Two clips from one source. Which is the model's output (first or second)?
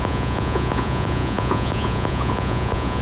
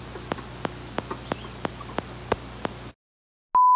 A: first